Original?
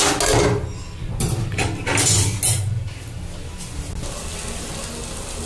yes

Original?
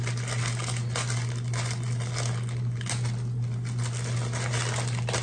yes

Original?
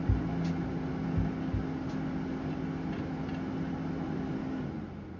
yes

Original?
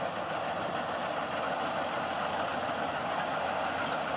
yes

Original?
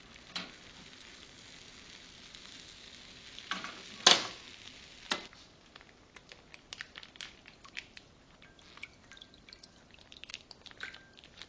yes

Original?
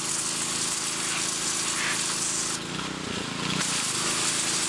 yes